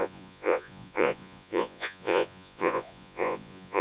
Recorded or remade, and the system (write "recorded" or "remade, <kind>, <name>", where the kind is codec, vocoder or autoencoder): remade, vocoder, Vocos